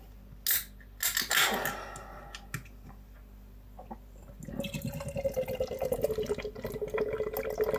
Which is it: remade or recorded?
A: recorded